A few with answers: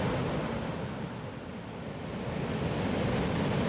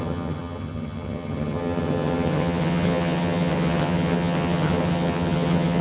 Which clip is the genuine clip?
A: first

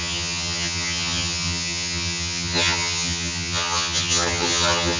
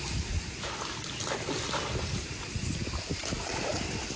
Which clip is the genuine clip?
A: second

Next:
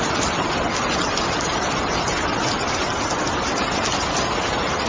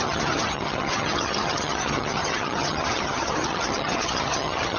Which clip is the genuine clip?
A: first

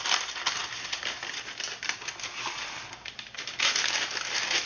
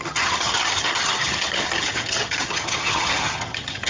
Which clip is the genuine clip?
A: first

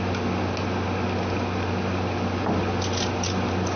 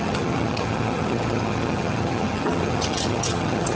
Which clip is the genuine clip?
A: first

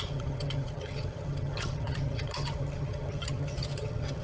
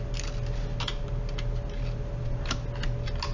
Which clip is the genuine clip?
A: second